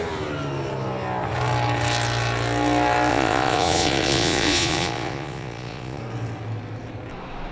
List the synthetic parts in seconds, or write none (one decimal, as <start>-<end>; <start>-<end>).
3.1-6.0